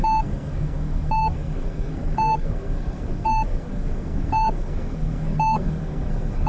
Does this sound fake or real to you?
fake